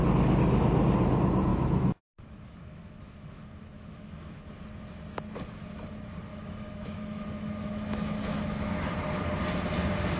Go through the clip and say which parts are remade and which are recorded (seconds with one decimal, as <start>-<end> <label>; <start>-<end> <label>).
0.0-1.5 recorded; 1.5-4.4 remade; 4.4-6.3 recorded; 6.3-8.9 remade; 8.9-10.2 recorded